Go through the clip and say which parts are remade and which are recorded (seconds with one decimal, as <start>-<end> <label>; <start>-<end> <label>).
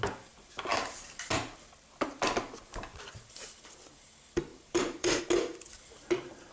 0.0-0.7 recorded; 0.7-1.3 remade; 1.3-2.6 recorded; 2.6-3.1 remade; 3.1-4.5 recorded; 4.5-5.2 remade; 5.2-6.5 recorded